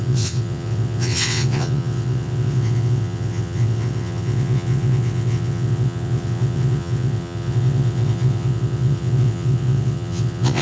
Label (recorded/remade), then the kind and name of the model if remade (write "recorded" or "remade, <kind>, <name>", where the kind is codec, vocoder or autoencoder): remade, vocoder, WaveNeXt